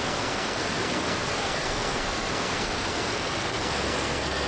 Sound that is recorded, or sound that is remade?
remade